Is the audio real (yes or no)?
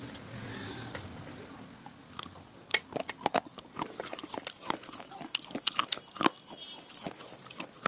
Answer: yes